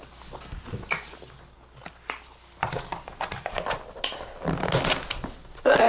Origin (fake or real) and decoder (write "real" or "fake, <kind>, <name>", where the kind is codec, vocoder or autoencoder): real